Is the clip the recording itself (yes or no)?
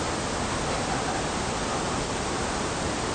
yes